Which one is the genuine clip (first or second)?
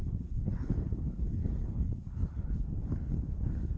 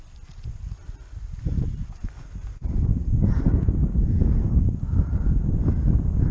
second